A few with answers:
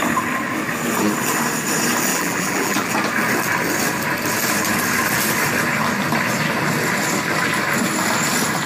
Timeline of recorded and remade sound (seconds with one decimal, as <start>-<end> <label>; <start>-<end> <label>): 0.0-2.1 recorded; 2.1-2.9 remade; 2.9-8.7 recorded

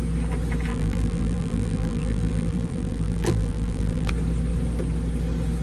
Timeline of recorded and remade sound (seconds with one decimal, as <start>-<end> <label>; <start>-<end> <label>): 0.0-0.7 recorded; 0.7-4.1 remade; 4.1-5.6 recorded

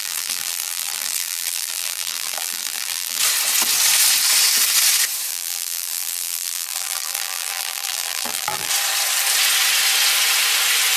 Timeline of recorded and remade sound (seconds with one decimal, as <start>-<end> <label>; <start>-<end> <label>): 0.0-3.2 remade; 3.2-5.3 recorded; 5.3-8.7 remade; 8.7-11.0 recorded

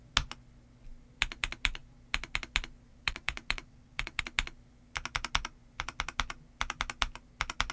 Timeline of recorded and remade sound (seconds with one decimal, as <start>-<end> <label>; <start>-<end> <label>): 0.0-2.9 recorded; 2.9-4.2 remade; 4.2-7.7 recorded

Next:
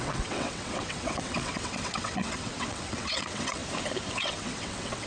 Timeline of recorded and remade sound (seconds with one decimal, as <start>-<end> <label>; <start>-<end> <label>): 0.0-3.6 remade; 3.6-4.1 recorded; 4.1-5.1 remade